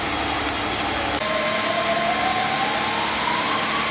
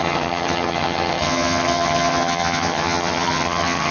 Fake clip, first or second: second